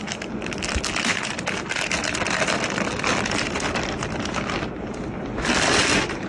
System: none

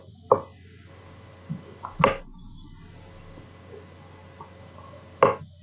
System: none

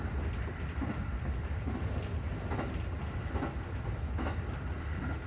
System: none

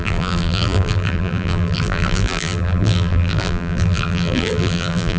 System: vocoder, BigVGAN v2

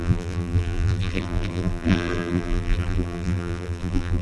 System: vocoder, BigVGAN v2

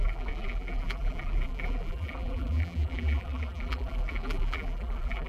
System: vocoder, BigVGAN v2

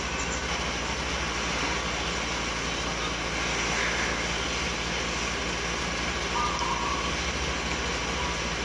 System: none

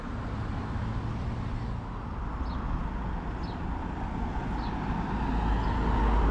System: none